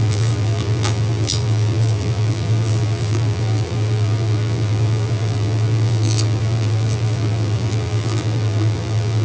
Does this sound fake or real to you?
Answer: fake